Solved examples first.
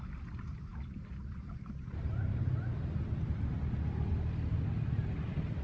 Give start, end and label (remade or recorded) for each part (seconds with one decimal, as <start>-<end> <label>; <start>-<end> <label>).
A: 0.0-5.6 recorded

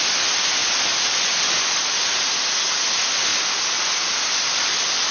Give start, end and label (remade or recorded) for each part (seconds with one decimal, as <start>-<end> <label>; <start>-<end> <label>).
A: 0.0-5.1 recorded

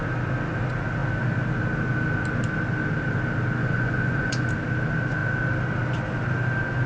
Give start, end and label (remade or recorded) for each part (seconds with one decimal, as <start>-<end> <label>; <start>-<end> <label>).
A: 0.0-3.6 recorded; 3.6-4.5 remade; 4.5-6.9 recorded

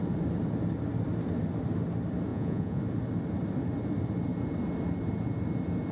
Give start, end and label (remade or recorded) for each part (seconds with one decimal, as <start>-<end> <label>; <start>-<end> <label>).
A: 0.0-2.3 recorded; 2.3-2.8 remade; 2.8-5.9 recorded

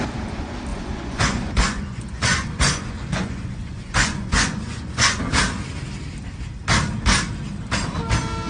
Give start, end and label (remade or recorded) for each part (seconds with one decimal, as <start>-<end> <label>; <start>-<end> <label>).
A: 0.0-0.7 recorded; 0.7-5.2 remade; 5.2-8.5 recorded